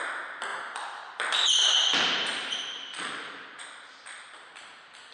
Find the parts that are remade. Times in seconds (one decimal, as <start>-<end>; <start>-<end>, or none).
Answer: 0.5-3.6